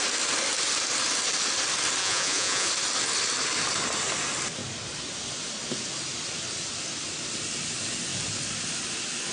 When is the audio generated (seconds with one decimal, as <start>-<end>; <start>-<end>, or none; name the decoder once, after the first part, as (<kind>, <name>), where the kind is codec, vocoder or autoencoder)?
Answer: 2.0-2.7 (vocoder, Vocos)